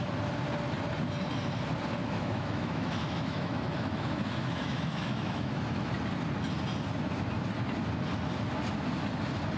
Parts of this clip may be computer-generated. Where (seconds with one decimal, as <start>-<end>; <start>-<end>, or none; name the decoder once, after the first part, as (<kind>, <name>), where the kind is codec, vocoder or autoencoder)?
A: 2.0-5.9 (autoencoder, DAC-VAE)